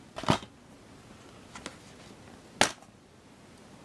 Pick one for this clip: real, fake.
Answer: real